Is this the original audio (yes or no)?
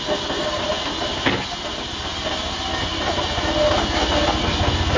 yes